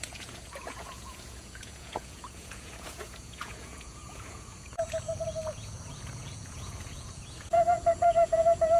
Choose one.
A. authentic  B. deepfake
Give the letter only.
B